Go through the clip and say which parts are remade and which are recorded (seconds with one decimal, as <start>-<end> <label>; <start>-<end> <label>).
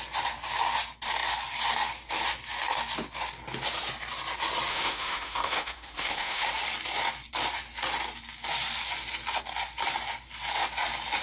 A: 0.0-4.7 recorded; 4.7-6.5 remade; 6.5-11.2 recorded